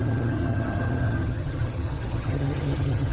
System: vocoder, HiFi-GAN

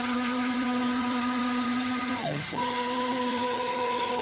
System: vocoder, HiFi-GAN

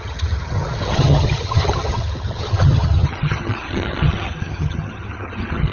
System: vocoder, HiFi-GAN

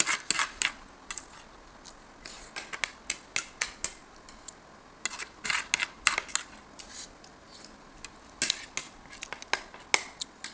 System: none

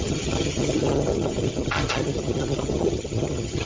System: vocoder, HiFi-GAN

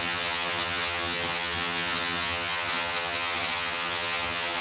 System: vocoder, HiFi-GAN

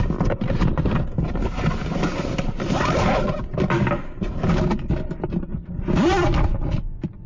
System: none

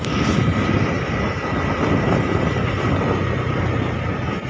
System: none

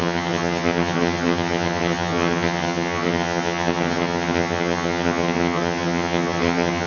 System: vocoder, HiFi-GAN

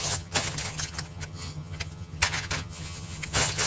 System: vocoder, HiFi-GAN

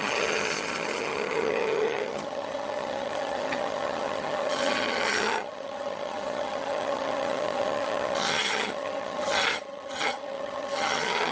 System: vocoder, HiFi-GAN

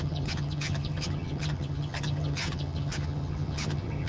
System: vocoder, HiFi-GAN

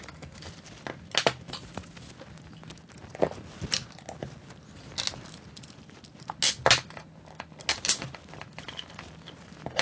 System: none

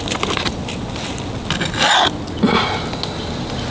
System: none